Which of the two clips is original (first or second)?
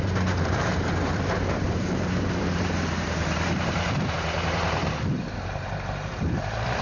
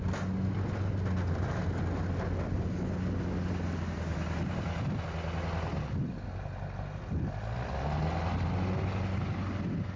second